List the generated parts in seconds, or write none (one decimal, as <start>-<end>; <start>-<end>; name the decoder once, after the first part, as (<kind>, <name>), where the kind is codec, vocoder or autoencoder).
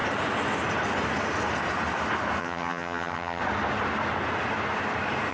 2.4-3.4 (vocoder, HiFi-GAN)